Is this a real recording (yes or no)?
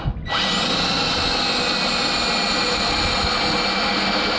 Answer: yes